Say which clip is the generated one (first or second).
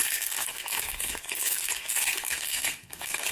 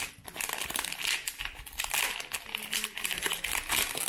first